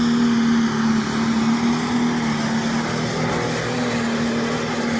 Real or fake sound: real